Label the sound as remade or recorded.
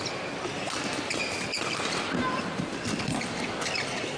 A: recorded